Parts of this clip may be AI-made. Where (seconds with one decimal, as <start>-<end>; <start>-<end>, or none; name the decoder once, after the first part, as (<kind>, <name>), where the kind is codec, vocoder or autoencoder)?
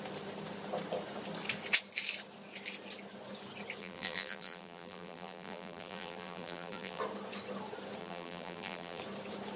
3.8-7.0 (vocoder, BigVGAN v2); 8.0-9.0